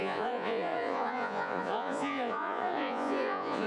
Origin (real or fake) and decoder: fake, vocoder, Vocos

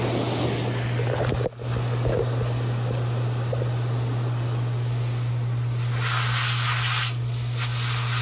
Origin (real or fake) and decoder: real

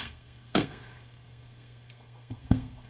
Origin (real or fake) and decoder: fake, codec, SNAC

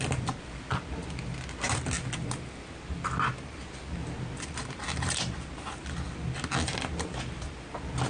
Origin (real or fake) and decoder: real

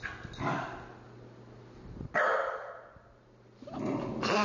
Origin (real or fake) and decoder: real